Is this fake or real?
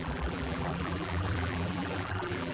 fake